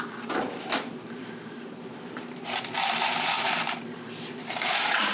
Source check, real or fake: fake